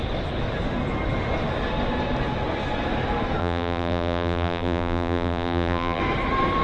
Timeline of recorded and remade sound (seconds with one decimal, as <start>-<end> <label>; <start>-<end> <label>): 0.0-3.4 recorded; 3.4-6.0 remade; 6.0-6.6 recorded